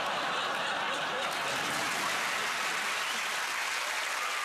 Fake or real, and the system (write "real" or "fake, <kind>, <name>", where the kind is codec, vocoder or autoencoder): real